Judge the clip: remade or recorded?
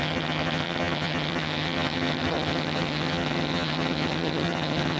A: remade